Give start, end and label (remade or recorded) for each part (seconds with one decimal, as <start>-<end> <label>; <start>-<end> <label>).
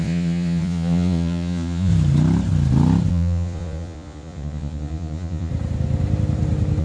0.0-1.9 remade; 1.9-3.1 recorded; 3.1-5.5 remade; 5.5-6.8 recorded